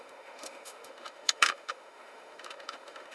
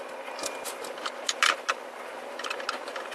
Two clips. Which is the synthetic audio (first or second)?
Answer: first